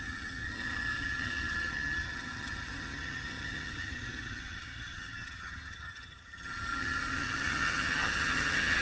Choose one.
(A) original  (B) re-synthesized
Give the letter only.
B